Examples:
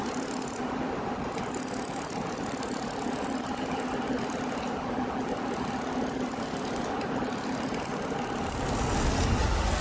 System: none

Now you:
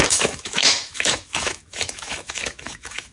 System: autoencoder, DAC-VAE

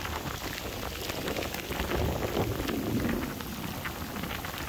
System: none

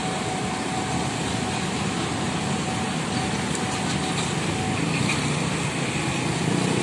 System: none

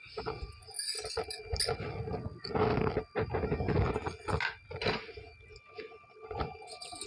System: none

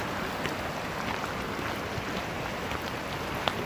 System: none